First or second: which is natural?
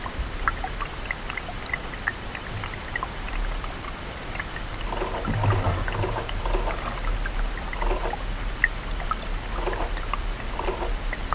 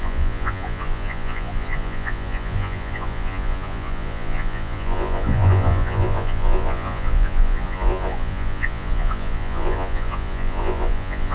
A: first